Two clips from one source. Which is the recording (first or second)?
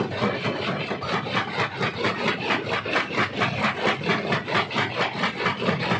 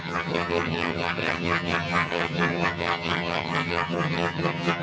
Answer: first